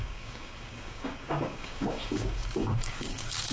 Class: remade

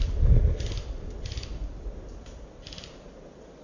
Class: remade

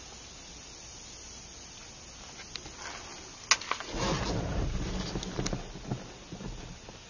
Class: recorded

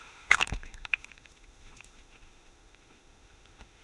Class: remade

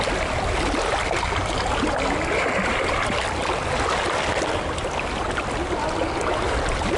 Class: recorded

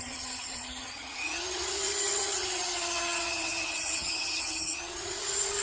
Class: remade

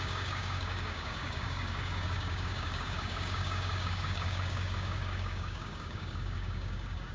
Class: remade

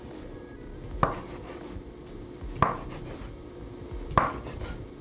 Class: recorded